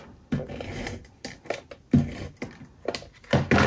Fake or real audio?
real